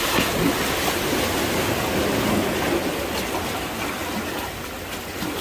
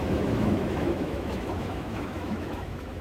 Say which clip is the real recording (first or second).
first